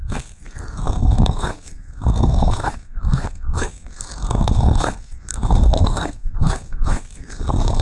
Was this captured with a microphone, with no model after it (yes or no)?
no